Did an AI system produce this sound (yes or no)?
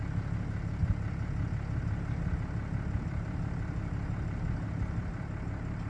no